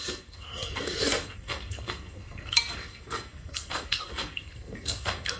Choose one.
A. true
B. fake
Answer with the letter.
B